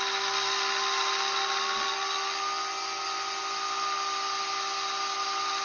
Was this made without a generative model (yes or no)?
yes